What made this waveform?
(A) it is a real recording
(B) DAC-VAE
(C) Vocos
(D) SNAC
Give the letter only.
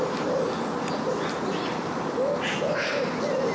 A